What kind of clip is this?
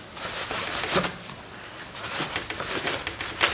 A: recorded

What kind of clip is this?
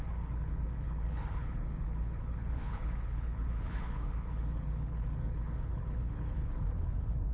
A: remade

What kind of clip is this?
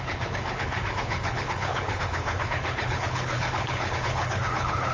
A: remade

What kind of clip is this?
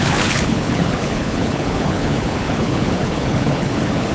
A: remade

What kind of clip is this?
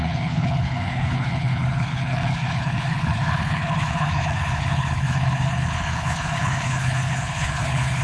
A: remade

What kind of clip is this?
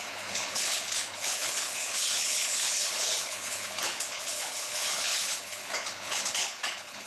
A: remade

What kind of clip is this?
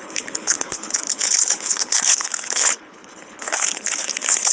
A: remade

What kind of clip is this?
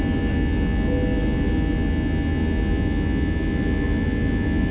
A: recorded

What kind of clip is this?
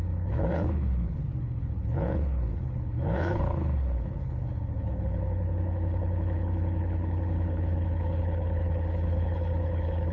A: remade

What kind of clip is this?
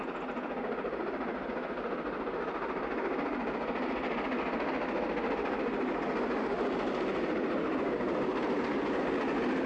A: recorded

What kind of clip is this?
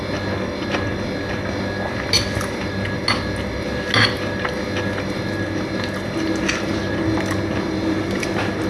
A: recorded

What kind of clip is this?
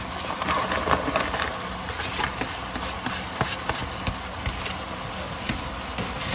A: recorded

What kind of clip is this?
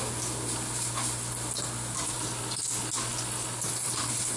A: recorded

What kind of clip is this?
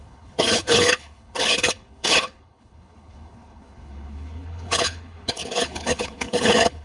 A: remade